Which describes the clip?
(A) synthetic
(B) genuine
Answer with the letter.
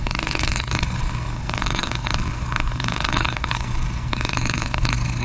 A